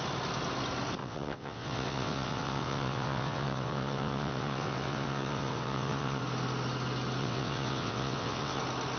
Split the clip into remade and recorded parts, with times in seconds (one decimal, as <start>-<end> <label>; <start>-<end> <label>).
0.0-1.0 recorded; 1.0-6.2 remade; 6.2-7.2 recorded; 7.2-8.6 remade; 8.6-9.0 recorded